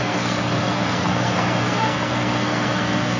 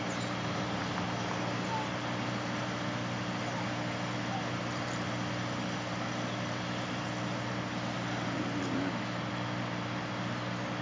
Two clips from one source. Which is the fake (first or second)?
first